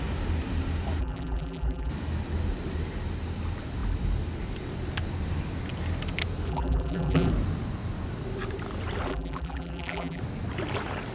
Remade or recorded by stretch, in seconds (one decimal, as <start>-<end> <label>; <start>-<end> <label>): 0.0-1.0 recorded; 1.0-1.9 remade; 1.9-6.5 recorded; 6.5-7.3 remade; 7.3-9.1 recorded; 9.1-10.2 remade; 10.2-11.1 recorded